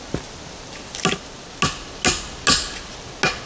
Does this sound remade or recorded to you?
recorded